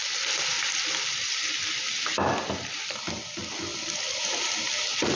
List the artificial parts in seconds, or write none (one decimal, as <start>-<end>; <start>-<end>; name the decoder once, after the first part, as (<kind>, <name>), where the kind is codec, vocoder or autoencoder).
none